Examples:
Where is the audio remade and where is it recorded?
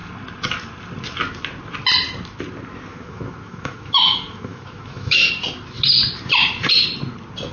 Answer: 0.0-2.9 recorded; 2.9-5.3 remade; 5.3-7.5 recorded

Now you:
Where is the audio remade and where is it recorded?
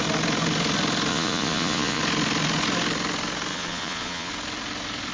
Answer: 0.0-1.1 recorded; 1.1-2.0 remade; 2.0-3.5 recorded; 3.5-4.3 remade; 4.3-5.1 recorded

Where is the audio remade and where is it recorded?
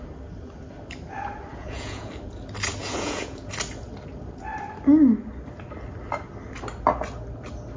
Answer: 0.0-1.5 recorded; 1.5-2.1 remade; 2.1-2.8 recorded; 2.8-3.5 remade; 3.5-7.8 recorded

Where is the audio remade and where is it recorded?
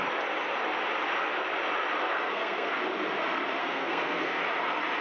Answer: 0.0-2.0 recorded; 2.0-2.7 remade; 2.7-3.6 recorded; 3.6-4.4 remade; 4.4-5.0 recorded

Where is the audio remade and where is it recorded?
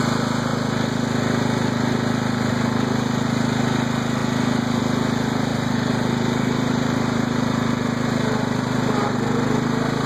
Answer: 0.0-5.5 recorded; 5.5-7.8 remade; 7.8-10.1 recorded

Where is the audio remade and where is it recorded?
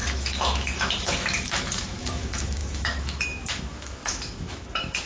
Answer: 0.0-5.1 remade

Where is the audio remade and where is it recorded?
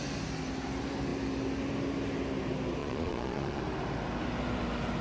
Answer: 0.0-2.8 recorded; 2.8-3.6 remade; 3.6-5.0 recorded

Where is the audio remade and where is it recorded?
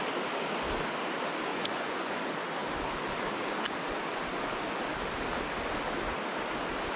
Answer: 0.0-1.5 recorded; 1.5-2.2 remade; 2.2-7.0 recorded